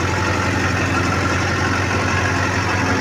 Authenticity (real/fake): real